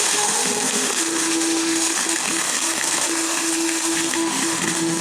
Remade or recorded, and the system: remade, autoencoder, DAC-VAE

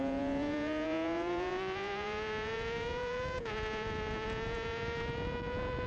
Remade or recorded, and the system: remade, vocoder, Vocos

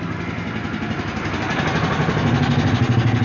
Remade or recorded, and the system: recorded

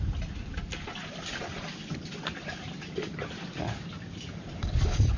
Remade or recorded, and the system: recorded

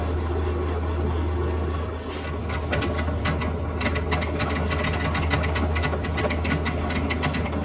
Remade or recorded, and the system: recorded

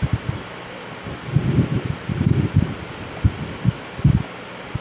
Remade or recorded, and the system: recorded